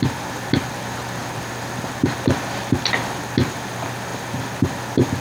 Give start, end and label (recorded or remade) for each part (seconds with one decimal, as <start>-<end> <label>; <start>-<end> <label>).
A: 0.0-5.2 recorded